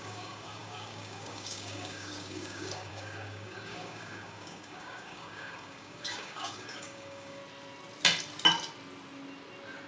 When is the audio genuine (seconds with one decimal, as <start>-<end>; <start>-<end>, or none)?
7.4-9.9